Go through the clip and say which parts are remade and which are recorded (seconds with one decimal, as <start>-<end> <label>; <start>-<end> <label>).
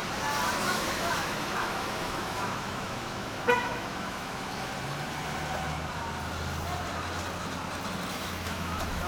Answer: 0.0-0.6 recorded; 0.6-4.7 remade; 4.7-8.1 recorded; 8.1-9.1 remade